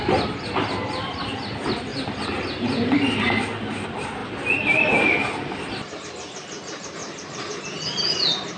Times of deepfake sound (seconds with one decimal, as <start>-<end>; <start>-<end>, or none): 1.9-3.3; 7.0-7.6

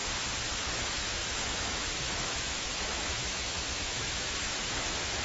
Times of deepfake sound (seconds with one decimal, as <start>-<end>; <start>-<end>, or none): 0.5-5.2

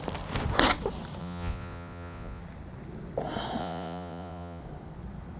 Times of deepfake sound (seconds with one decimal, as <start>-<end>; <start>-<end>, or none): 1.2-2.4; 3.6-4.6

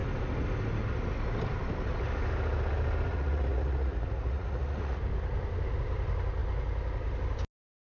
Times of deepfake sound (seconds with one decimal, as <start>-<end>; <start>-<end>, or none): 3.1-5.0

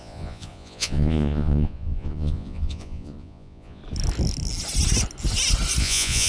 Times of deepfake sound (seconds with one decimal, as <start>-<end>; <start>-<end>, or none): 0.0-3.8; 5.8-6.3

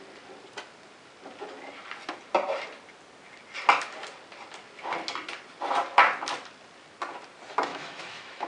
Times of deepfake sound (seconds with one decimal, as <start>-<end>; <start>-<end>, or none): 7.7-8.5

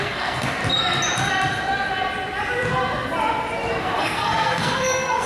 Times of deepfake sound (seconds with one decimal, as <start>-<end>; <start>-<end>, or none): 0.0-0.6; 3.8-5.3

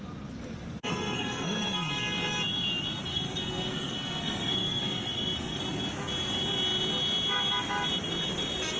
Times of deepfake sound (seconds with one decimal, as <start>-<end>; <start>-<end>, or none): 0.9-1.9; 3.1-5.6